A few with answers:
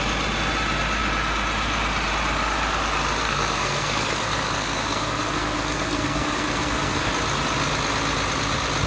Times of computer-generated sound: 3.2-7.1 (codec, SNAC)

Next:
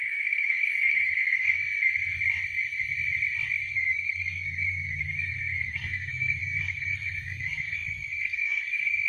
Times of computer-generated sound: 0.0-1.6 (codec, SNAC); 3.7-9.1

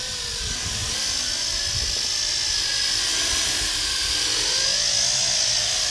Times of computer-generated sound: none

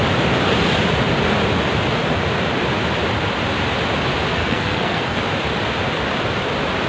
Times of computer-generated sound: 4.3-5.2 (codec, SNAC)

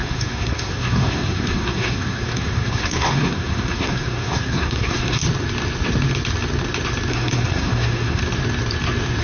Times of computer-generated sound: 0.0-5.2 (codec, SNAC); 7.1-8.2

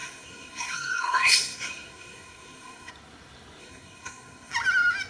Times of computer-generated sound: 0.0-2.9 (codec, SNAC); 3.6-4.5

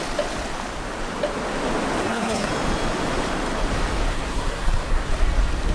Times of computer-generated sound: 2.0-2.5 (codec, SNAC); 4.1-5.1